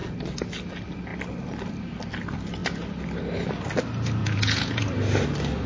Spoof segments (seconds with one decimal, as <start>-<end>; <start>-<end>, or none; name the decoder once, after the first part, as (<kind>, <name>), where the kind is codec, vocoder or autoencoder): 4.2-4.9 (vocoder, Vocos)